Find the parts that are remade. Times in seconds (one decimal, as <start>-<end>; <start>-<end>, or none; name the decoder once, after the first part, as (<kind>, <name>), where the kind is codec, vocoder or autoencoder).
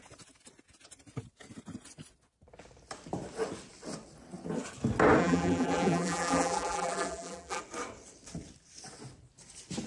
5.2-7.6 (vocoder, BigVGAN v2)